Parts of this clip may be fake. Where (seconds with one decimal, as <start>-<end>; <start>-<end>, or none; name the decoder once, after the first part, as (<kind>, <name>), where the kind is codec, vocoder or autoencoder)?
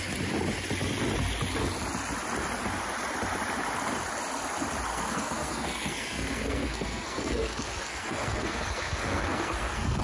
4.9-10.0 (codec, SNAC)